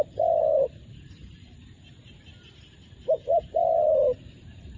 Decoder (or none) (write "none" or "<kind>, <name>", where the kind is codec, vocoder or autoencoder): vocoder, BigVGAN v2